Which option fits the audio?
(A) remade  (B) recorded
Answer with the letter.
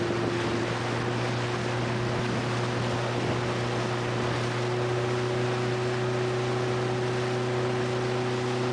B